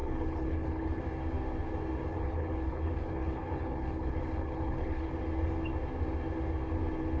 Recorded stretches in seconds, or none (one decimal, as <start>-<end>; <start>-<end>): 1.0-2.1; 5.1-7.2